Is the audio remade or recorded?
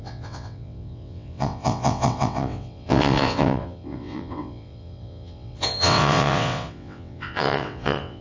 remade